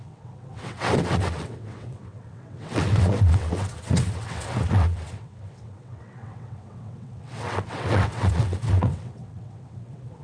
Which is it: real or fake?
fake